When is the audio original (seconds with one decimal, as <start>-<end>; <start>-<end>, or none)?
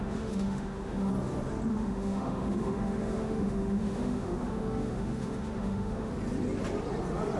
1.1-1.7; 6.1-7.4